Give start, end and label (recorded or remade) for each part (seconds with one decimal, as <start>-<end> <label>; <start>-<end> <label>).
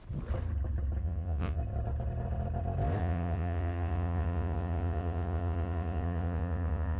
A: 0.0-1.0 recorded; 1.0-1.6 remade; 1.6-3.0 recorded; 3.0-7.0 remade